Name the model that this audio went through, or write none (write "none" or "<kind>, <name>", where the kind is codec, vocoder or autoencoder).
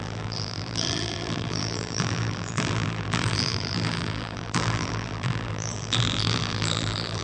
vocoder, BigVGAN v2